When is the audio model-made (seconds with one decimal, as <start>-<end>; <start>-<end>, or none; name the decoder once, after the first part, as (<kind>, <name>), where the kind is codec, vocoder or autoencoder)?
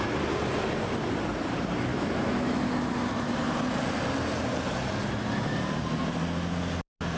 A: 1.9-2.6 (autoencoder, DAC-VAE)